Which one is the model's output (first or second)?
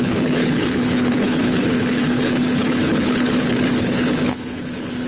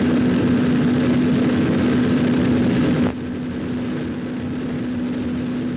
first